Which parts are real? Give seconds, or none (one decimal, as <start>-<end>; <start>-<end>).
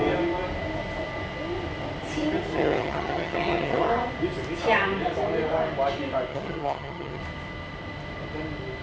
0.0-2.5; 3.9-6.3; 7.2-8.8